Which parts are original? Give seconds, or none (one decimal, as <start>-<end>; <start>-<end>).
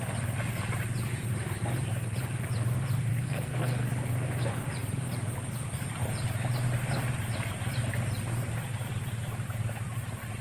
0.0-3.1; 3.9-10.4